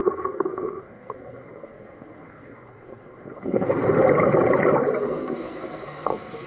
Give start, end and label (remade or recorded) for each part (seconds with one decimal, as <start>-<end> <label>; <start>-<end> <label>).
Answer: 0.0-3.8 remade; 3.8-5.0 recorded; 5.0-6.5 remade